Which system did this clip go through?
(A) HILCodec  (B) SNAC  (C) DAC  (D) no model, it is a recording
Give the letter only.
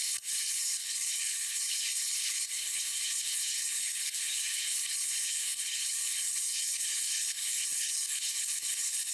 A